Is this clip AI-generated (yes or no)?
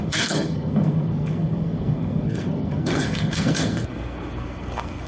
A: yes